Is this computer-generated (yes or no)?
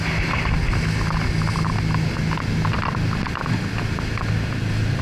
no